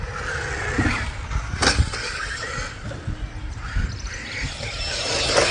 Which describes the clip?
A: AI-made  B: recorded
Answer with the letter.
B